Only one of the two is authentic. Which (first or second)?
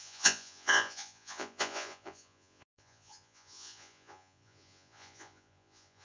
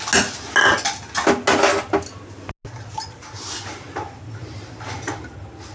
second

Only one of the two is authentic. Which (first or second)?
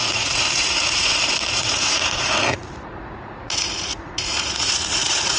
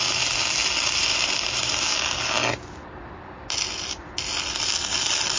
second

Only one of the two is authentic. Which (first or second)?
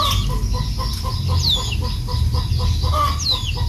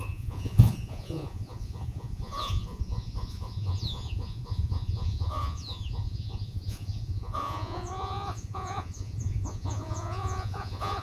first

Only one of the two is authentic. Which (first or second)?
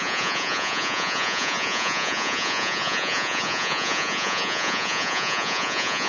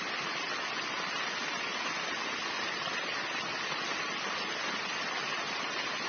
second